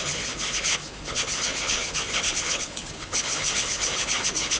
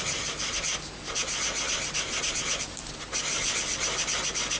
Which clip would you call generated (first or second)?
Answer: first